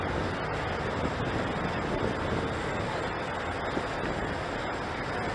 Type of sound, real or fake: real